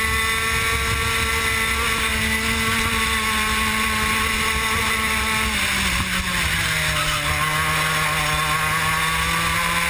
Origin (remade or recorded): recorded